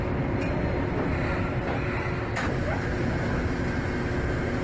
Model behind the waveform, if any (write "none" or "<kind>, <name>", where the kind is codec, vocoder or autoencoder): none